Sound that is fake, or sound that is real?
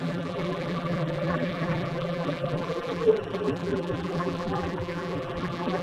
fake